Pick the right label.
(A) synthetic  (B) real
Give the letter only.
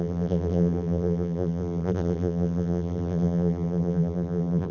A